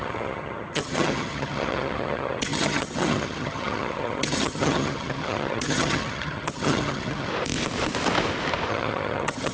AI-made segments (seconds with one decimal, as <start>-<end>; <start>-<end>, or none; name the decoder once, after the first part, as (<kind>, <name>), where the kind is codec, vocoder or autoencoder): 0.0-7.3 (vocoder, HiFi-GAN); 8.7-9.5